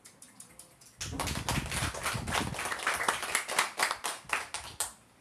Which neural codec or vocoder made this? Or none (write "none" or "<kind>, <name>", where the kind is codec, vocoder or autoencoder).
none